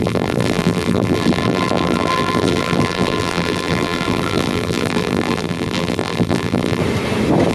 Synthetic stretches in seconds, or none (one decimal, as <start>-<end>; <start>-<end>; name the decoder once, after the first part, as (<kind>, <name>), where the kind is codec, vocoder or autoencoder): 0.0-6.8 (vocoder, BigVGAN v2)